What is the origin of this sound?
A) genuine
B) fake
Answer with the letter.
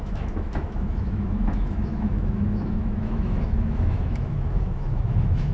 B